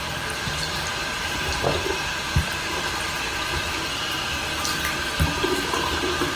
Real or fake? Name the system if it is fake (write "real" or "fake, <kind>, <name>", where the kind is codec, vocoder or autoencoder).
fake, vocoder, BigVGAN v2